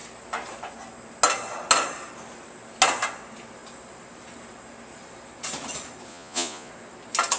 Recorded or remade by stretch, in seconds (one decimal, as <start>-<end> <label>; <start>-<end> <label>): 0.0-6.1 recorded; 6.1-6.7 remade; 6.7-7.4 recorded